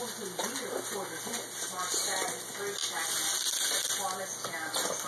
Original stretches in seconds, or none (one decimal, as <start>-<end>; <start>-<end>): 0.0-5.1